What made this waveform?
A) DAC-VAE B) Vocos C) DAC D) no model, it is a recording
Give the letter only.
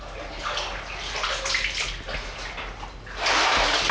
D